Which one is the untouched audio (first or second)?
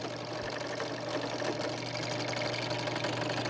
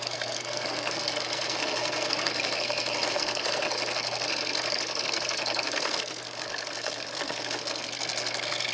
first